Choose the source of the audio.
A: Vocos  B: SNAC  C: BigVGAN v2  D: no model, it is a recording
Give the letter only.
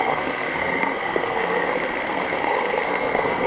B